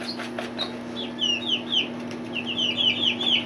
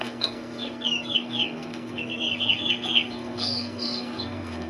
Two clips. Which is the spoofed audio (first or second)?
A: second